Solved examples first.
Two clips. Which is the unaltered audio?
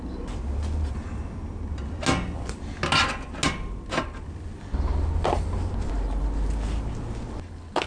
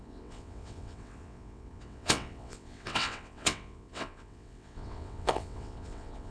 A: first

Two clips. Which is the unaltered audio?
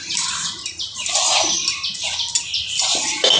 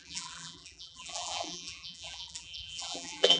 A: first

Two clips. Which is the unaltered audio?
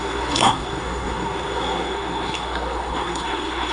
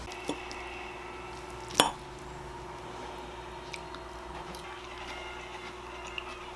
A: second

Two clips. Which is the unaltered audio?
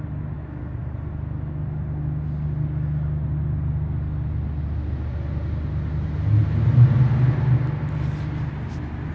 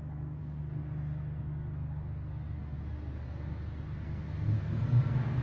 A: first